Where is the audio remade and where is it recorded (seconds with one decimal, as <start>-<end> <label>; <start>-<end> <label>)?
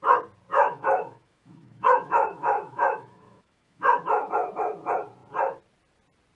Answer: 0.0-0.5 recorded; 0.5-4.3 remade; 4.3-6.4 recorded